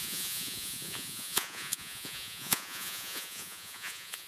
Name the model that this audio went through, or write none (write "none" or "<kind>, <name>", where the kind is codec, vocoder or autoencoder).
vocoder, Vocos